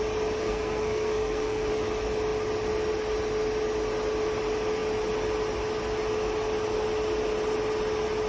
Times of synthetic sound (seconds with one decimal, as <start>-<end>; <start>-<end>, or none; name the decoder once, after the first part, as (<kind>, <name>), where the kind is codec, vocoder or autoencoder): 0.4-1.7 (codec, SNAC)